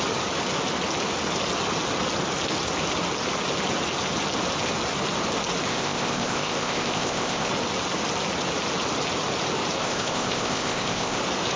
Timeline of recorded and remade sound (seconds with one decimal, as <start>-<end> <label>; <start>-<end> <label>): 0.0-5.7 recorded; 5.7-7.5 remade; 7.5-9.8 recorded; 9.8-11.2 remade; 11.2-11.6 recorded